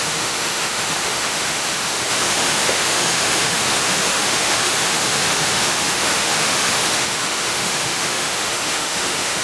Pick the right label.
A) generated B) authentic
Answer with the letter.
A